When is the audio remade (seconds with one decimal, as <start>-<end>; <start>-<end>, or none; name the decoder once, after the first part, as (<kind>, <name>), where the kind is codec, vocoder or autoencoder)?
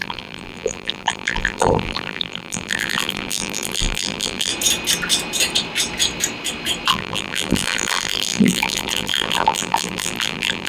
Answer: 0.0-4.5 (vocoder, BigVGAN v2); 6.9-10.7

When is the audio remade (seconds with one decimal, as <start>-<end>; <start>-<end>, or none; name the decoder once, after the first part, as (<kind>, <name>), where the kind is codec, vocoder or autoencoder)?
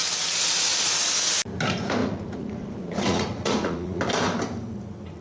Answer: 2.0-4.0 (vocoder, Vocos)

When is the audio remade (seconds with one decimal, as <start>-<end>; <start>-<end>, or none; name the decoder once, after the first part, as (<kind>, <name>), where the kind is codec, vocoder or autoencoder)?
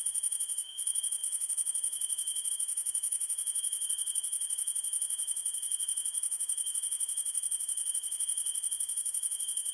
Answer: 0.0-9.7 (autoencoder, DAC-VAE)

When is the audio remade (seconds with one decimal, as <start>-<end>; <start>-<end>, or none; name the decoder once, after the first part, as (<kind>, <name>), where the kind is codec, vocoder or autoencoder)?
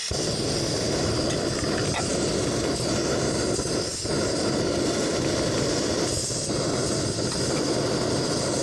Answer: none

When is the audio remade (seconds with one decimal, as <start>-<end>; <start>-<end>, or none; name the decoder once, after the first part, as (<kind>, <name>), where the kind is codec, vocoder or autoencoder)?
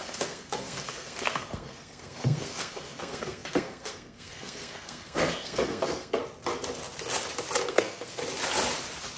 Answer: 0.0-6.2 (codec, SNAC); 7.6-8.2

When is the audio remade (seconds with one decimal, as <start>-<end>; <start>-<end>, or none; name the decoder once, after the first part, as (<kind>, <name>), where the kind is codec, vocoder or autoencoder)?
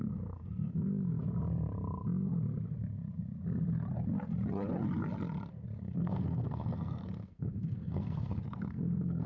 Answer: 0.0-1.2 (codec, SNAC); 5.8-9.3